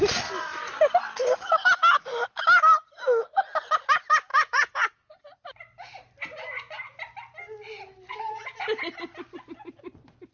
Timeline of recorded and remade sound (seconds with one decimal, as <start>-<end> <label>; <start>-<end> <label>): 0.0-4.3 recorded; 4.3-5.2 remade; 5.2-10.3 recorded

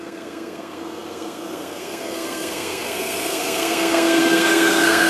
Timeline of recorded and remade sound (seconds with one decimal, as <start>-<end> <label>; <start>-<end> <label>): 0.0-5.1 remade

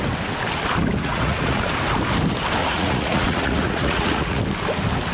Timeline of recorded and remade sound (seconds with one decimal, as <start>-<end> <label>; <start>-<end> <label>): 0.0-1.0 recorded; 1.0-1.7 remade; 1.7-2.6 recorded; 2.6-4.4 remade; 4.4-5.1 recorded

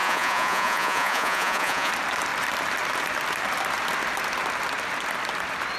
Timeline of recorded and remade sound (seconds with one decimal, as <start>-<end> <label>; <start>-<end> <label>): 0.0-1.9 remade; 1.9-5.8 recorded

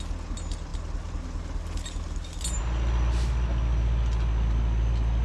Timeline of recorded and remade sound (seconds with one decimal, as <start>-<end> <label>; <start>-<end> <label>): 0.0-5.2 recorded

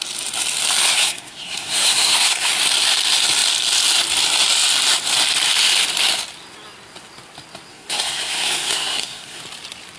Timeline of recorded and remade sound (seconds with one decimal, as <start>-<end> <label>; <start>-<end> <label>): 0.0-0.9 recorded; 0.9-2.5 remade; 2.5-7.7 recorded; 7.7-9.4 remade; 9.4-10.0 recorded

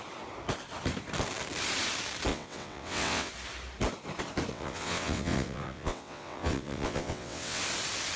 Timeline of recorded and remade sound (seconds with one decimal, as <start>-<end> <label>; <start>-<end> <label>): 0.0-2.3 recorded; 2.3-3.3 remade; 3.3-4.5 recorded; 4.5-7.6 remade; 7.6-8.2 recorded

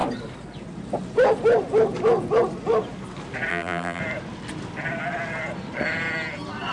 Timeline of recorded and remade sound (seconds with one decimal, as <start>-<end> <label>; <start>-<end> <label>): 0.0-3.5 recorded; 3.5-4.0 remade; 4.0-6.7 recorded